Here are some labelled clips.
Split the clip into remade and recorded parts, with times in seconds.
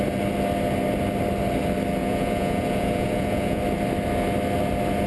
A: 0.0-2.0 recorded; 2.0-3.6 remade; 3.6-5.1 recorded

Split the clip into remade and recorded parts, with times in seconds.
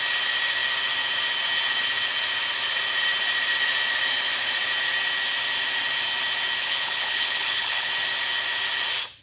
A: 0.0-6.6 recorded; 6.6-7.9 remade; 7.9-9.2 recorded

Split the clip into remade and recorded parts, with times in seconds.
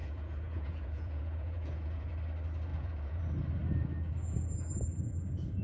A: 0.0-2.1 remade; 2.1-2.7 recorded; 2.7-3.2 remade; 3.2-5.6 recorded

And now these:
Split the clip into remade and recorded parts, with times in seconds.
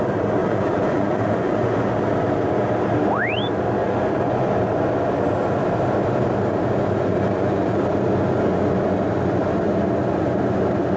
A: 0.0-0.4 recorded; 0.4-1.9 remade; 1.9-3.8 recorded; 3.8-4.5 remade; 4.5-7.1 recorded; 7.1-7.8 remade; 7.8-11.0 recorded